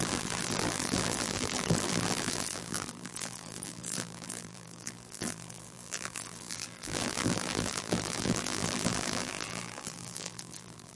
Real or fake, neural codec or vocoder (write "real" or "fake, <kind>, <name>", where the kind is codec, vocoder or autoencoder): fake, vocoder, BigVGAN v2